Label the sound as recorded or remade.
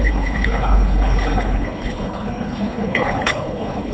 remade